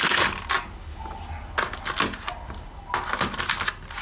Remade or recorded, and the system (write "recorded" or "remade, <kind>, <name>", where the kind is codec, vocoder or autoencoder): recorded